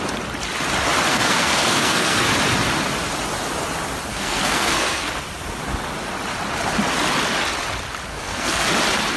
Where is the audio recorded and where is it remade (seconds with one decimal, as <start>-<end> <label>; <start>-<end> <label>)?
0.0-1.1 recorded; 1.1-2.3 remade; 2.3-4.1 recorded; 4.1-5.1 remade; 5.1-8.1 recorded; 8.1-8.7 remade; 8.7-9.2 recorded